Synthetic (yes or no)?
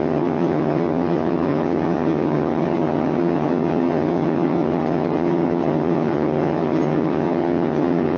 yes